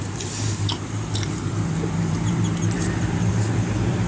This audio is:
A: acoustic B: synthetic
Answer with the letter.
B